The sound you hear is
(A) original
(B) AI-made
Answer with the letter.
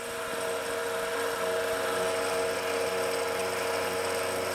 A